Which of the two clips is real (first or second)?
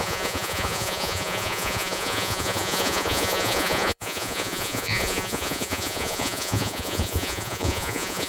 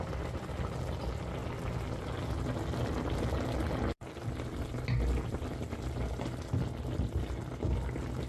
second